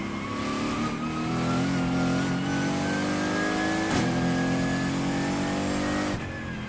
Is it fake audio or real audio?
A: real